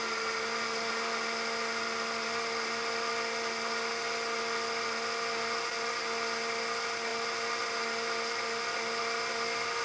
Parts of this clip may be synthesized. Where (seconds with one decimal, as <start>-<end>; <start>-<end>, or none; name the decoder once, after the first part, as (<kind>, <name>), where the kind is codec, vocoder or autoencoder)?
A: none